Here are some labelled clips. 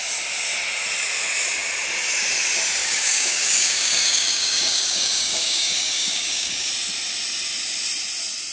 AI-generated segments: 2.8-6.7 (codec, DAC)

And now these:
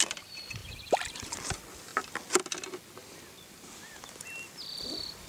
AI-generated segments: none

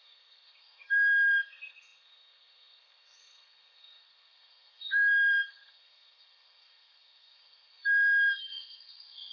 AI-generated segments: 0.0-9.3 (codec, SNAC)

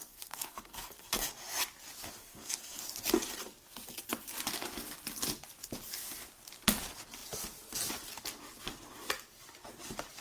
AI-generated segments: 0.0-1.3 (codec, SNAC); 2.2-2.8

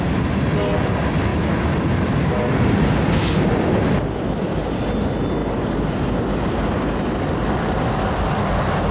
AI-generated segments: none

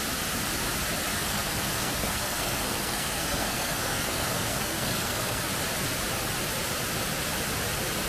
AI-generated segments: 1.1-5.4 (codec, SNAC)

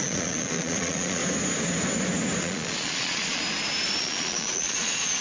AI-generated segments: 0.0-1.2 (vocoder, Vocos); 2.4-3.4; 4.0-5.2

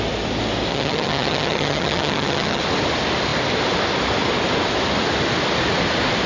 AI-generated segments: 0.7-2.6 (vocoder, HiFi-GAN)